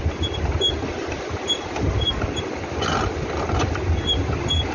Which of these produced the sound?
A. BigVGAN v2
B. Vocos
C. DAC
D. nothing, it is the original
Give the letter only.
D